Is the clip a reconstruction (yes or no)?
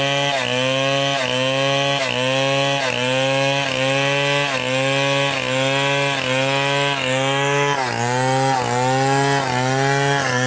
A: no